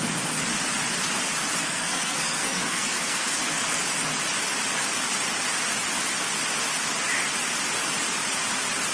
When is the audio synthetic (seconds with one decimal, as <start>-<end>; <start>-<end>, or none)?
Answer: 1.6-3.8